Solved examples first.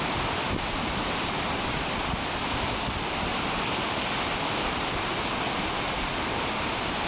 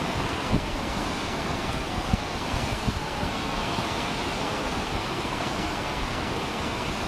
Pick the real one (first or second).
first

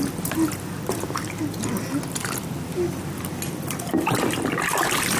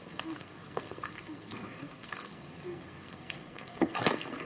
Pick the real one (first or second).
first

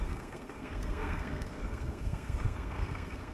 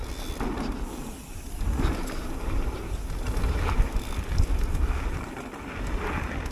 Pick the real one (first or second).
second